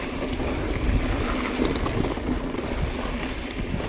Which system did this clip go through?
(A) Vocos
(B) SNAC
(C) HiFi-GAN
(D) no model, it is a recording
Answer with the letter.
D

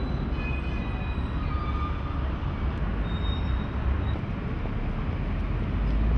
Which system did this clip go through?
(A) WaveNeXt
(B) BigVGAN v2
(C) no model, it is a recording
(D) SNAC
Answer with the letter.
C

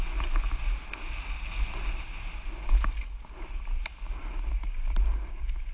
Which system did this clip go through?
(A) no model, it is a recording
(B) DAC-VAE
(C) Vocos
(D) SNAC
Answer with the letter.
A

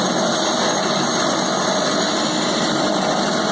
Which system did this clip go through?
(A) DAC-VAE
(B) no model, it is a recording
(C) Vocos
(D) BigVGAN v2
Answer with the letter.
B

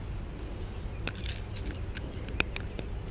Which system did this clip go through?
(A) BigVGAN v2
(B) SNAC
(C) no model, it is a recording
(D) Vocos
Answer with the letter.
C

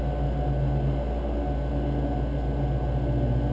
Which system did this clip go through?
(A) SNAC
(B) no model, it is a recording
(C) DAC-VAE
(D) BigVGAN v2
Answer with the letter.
B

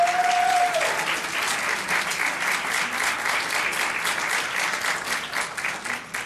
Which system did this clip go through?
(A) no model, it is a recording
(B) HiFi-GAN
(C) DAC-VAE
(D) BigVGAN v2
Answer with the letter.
A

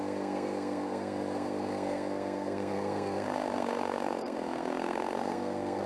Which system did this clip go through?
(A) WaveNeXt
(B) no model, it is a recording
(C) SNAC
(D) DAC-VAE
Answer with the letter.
C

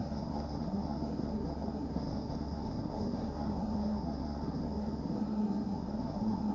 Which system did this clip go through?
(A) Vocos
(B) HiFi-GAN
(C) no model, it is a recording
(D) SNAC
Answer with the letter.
D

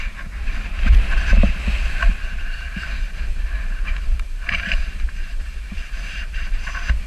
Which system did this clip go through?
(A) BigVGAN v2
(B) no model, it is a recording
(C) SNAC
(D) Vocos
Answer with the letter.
A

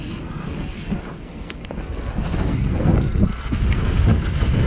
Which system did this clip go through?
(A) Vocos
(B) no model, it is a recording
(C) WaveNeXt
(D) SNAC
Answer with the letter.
D